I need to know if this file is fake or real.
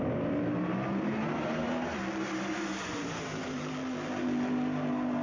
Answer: fake